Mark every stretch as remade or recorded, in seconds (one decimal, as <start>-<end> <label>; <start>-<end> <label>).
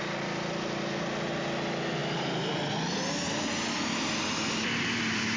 0.0-5.4 recorded